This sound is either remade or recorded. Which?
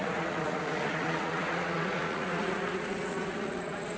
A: remade